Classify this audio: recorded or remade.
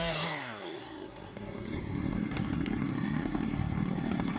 remade